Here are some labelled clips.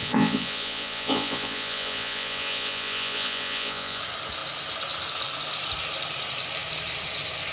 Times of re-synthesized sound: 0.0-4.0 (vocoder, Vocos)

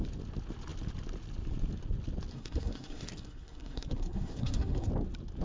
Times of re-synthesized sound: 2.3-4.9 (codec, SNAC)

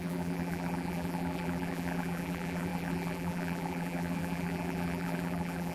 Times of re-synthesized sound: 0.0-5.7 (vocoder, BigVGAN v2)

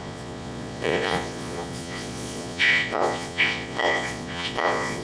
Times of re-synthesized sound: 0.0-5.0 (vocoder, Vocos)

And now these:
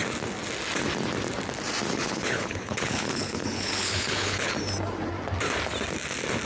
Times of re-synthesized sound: 1.9-4.5 (codec, HILCodec)

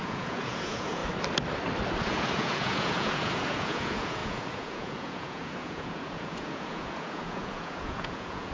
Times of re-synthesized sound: 0.0-1.0 (vocoder, Vocos); 2.0-8.5